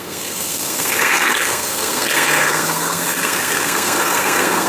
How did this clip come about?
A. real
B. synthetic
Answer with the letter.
B